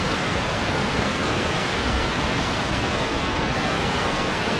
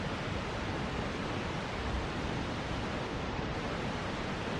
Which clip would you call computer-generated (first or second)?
first